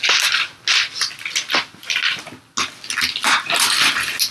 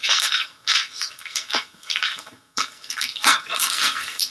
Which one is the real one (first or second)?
first